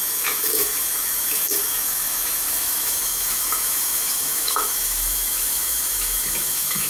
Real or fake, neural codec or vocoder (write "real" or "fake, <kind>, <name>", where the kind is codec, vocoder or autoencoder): fake, autoencoder, DAC-VAE